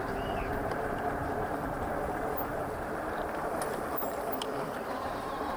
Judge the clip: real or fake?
fake